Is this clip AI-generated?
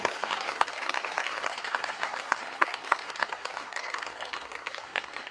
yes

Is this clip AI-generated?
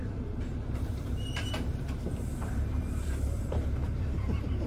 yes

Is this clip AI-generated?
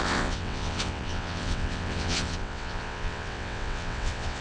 yes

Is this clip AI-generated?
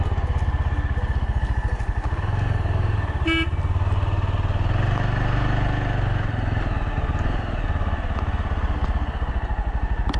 no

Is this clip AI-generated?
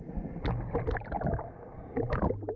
no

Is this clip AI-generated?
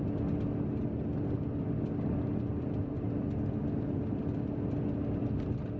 no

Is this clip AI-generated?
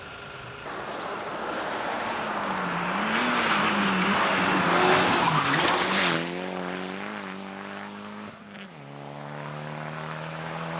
no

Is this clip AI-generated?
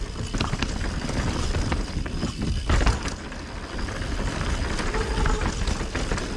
no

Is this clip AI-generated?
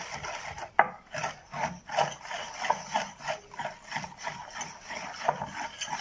no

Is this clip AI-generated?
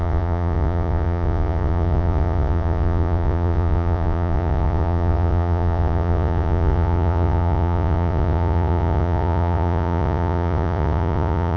yes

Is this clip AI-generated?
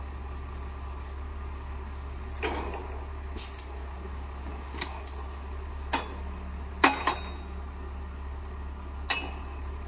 no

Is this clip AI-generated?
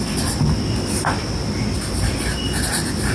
no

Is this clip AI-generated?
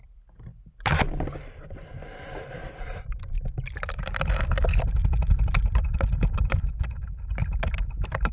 yes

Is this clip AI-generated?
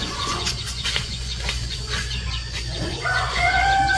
yes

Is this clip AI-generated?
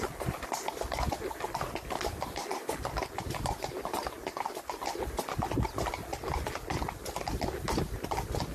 no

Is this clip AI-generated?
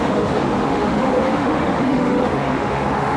yes